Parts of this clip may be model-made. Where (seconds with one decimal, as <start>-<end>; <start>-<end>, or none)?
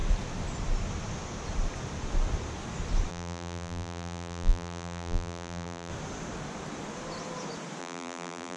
3.1-5.9; 7.8-8.6